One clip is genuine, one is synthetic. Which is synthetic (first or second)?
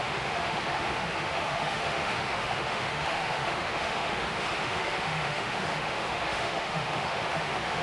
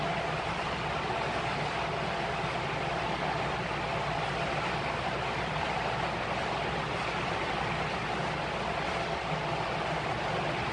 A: first